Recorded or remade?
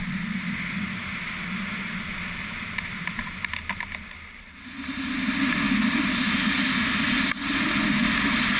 recorded